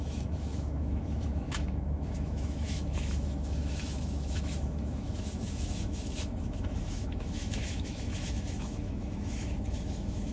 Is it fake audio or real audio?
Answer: fake